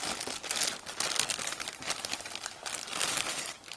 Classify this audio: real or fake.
real